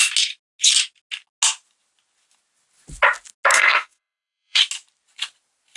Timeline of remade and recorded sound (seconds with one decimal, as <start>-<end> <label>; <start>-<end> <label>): 0.0-3.5 recorded; 3.5-4.6 remade; 4.6-5.8 recorded